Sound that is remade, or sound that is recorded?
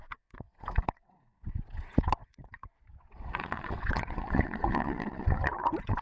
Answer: remade